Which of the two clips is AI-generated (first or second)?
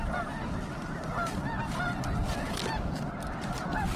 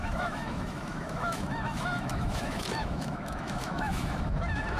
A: second